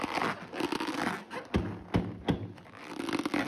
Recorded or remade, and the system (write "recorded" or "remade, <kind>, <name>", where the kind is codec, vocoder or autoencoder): recorded